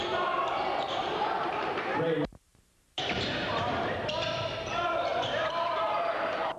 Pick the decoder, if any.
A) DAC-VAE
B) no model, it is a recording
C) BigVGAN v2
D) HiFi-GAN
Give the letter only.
C